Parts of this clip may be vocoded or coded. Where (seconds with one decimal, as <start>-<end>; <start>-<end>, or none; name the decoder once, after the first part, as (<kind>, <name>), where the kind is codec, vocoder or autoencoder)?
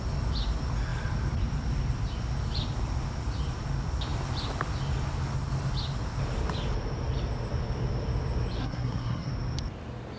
8.6-9.3 (codec, SNAC)